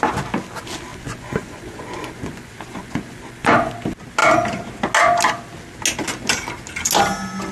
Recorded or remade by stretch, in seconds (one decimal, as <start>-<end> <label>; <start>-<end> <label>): 0.0-0.9 recorded; 0.9-3.7 remade; 3.7-7.5 recorded